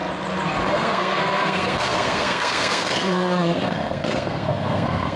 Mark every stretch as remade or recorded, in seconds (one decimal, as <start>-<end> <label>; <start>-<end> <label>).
0.0-0.7 recorded; 0.7-5.2 remade